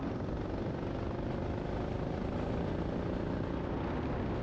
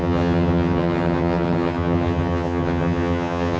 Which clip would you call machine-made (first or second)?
second